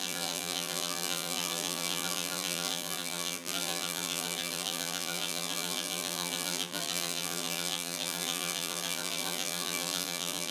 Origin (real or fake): fake